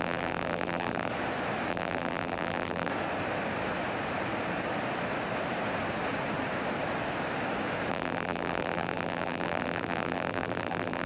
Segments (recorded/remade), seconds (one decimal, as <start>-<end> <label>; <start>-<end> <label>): 0.0-1.1 remade; 1.1-1.7 recorded; 1.7-2.9 remade; 2.9-7.9 recorded; 7.9-11.1 remade